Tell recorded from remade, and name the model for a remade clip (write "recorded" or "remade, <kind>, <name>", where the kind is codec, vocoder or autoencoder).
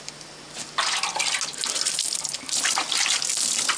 recorded